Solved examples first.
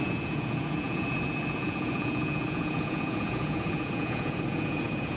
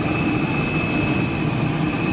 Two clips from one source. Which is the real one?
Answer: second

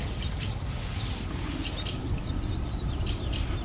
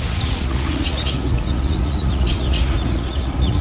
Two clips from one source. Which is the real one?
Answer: first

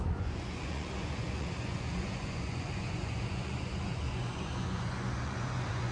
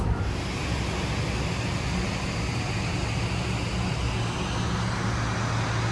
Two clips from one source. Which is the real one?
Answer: second